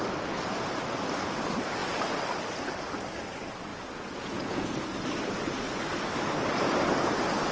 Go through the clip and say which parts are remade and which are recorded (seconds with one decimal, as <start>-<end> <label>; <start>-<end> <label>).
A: 0.0-3.7 recorded; 3.7-4.8 remade; 4.8-7.5 recorded